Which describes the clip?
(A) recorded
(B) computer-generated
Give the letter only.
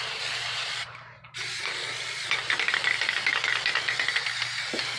A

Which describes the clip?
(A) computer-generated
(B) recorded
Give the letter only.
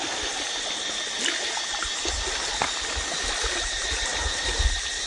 B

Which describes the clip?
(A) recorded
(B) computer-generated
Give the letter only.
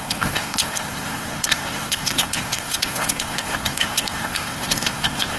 B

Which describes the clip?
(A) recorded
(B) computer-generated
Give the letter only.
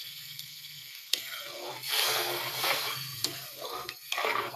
B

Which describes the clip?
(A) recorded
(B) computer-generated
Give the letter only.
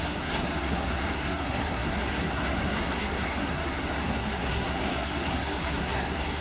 B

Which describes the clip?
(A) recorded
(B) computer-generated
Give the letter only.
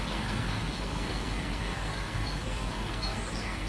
B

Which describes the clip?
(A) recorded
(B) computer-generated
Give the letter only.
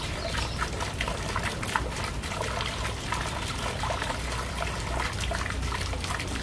A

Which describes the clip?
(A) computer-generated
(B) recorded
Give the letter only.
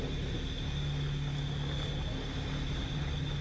B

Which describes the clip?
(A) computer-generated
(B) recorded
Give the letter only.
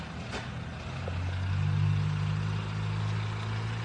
B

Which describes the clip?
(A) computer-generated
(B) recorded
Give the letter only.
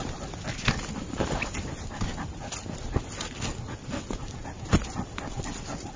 B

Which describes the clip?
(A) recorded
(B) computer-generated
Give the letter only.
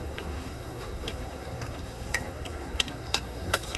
B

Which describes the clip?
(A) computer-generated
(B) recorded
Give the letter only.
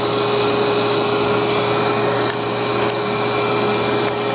B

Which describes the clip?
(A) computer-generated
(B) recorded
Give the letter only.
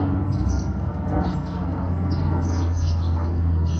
A